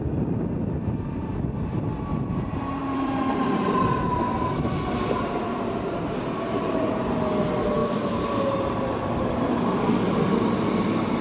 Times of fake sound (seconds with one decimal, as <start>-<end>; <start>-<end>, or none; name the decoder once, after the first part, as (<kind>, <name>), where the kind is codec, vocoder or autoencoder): 2.8-7.0 (vocoder, BigVGAN v2)